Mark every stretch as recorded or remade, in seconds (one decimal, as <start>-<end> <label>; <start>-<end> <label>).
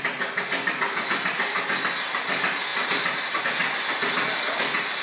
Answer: 0.0-5.0 recorded